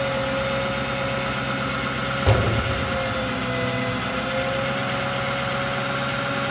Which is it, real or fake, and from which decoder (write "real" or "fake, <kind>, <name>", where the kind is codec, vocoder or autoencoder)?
real